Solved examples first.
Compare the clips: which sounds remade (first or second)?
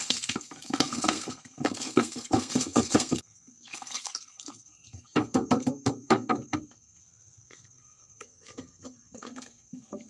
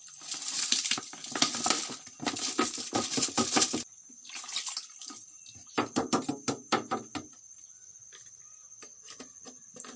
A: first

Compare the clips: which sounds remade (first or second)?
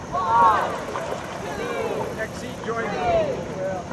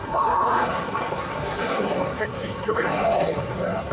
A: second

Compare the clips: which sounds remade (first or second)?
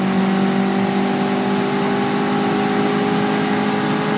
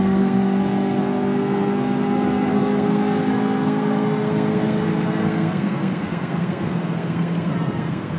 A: second